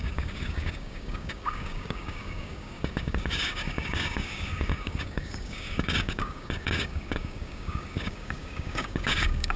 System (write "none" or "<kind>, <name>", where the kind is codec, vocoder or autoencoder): codec, DAC